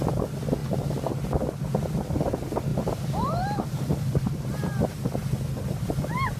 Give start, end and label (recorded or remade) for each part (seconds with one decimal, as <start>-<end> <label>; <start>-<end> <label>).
0.0-0.6 recorded; 0.6-1.1 remade; 1.1-2.7 recorded; 2.7-4.6 remade; 4.6-6.4 recorded